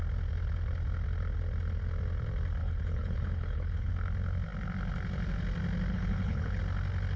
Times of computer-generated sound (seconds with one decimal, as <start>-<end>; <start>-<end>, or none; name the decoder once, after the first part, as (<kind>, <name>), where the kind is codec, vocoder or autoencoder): 2.6-3.9 (codec, HILCodec); 5.9-6.6